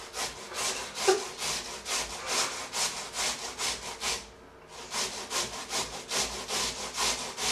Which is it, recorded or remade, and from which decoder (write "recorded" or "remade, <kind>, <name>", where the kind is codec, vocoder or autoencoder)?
recorded